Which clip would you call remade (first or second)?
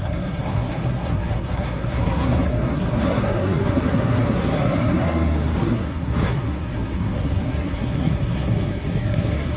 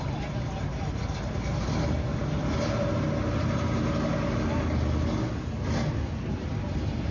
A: first